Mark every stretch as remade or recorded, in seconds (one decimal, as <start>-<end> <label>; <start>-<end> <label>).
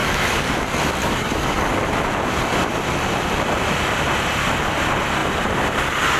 0.0-0.6 remade; 0.6-1.0 recorded; 1.0-1.8 remade; 1.8-6.2 recorded